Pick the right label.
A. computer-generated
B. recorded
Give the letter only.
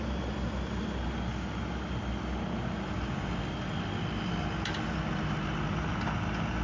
B